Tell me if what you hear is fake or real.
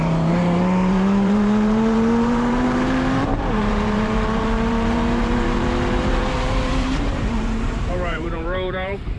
fake